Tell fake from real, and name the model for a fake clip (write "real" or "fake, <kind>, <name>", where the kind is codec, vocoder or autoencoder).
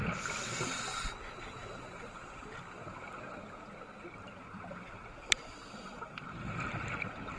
real